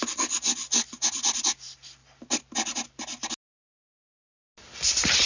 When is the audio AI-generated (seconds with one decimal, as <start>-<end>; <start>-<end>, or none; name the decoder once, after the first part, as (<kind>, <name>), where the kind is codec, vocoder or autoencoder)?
none